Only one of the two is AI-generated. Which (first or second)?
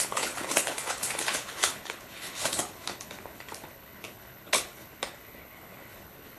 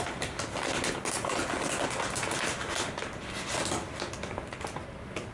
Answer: first